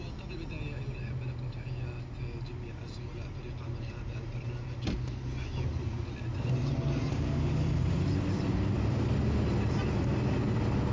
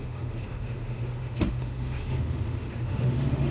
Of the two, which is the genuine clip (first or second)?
first